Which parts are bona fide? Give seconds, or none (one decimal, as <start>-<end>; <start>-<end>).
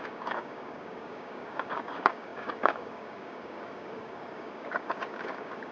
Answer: none